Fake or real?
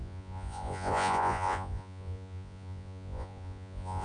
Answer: fake